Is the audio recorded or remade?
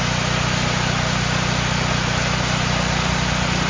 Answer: recorded